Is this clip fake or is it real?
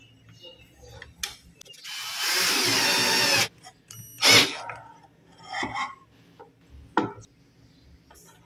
real